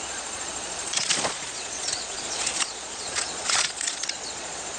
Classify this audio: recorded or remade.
remade